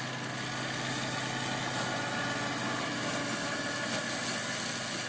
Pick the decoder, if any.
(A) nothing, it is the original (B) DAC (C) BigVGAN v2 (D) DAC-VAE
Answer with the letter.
A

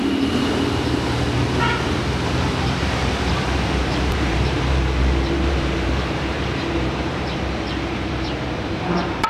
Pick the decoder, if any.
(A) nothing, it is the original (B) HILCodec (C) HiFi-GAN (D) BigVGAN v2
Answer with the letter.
D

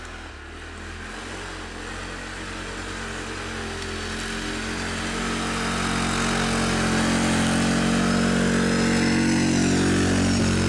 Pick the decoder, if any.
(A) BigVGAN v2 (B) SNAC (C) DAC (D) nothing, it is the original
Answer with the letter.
D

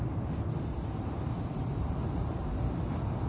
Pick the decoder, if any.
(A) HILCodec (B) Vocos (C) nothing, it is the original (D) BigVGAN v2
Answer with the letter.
C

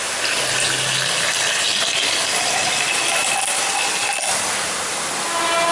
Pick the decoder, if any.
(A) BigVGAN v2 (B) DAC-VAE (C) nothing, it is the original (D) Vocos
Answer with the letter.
C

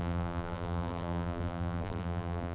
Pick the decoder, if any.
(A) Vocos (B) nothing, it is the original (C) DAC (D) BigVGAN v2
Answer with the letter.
D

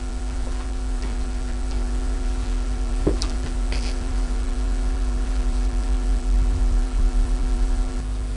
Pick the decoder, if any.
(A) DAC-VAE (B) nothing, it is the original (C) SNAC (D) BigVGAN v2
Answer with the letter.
D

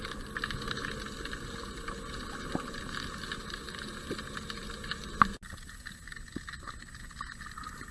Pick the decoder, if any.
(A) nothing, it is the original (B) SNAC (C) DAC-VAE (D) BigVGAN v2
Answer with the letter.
A